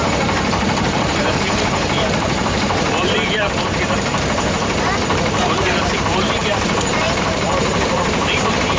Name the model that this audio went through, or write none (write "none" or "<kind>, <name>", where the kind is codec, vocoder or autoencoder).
vocoder, BigVGAN v2